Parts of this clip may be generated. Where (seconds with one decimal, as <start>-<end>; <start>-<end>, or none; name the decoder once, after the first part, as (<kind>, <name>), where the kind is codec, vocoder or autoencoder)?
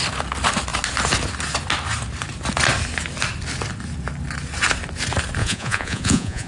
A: 5.4-6.5 (vocoder, Vocos)